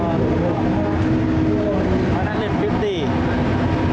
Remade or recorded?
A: recorded